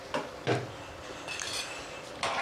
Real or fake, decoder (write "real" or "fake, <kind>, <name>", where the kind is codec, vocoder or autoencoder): fake, vocoder, BigVGAN v2